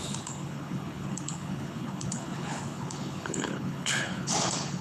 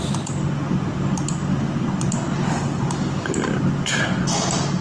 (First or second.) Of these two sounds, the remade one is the first